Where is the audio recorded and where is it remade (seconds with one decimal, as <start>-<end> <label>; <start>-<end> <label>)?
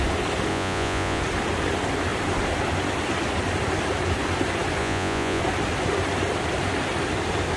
0.0-0.5 recorded; 0.5-1.2 remade; 1.2-4.8 recorded; 4.8-5.4 remade; 5.4-7.6 recorded